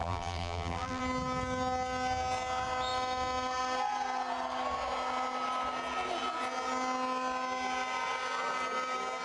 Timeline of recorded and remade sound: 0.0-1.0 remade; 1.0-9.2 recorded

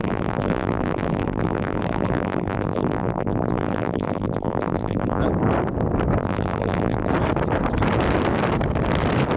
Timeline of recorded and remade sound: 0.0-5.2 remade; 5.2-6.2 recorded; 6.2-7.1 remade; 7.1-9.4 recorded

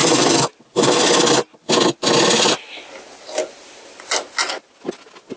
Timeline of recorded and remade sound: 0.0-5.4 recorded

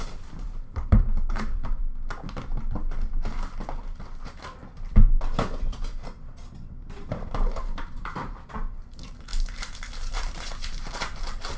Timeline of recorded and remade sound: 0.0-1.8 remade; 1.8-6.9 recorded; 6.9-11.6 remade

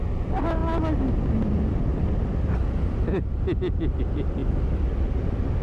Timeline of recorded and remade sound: 0.0-5.6 recorded

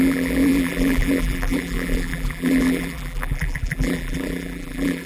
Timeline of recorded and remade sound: 0.0-5.1 remade

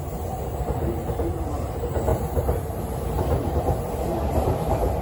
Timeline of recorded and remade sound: 0.0-0.5 recorded; 0.5-1.1 remade; 1.1-2.1 recorded; 2.1-2.8 remade; 2.8-5.0 recorded

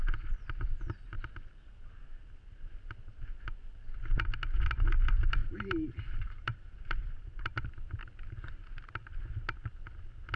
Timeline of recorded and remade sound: 0.0-5.4 recorded; 5.4-7.6 remade; 7.6-10.4 recorded